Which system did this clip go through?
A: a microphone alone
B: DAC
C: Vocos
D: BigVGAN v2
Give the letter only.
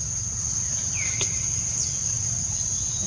A